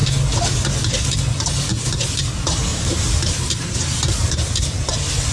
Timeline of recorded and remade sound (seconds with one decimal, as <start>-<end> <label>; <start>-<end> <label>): 0.0-2.7 recorded; 2.7-4.4 remade; 4.4-5.3 recorded